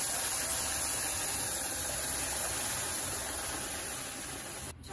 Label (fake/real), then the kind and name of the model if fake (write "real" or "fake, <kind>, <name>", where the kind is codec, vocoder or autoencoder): real